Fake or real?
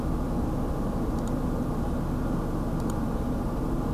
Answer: real